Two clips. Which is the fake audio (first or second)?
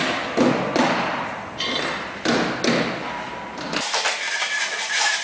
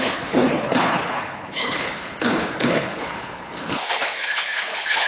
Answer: second